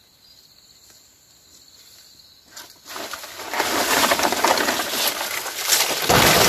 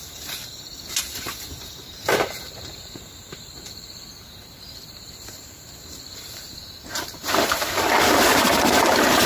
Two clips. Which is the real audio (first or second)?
first